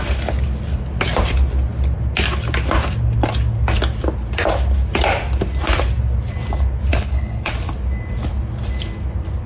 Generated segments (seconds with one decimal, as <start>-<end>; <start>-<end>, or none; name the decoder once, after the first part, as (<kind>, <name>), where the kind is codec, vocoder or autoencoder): 6.9-7.5 (codec, HILCodec)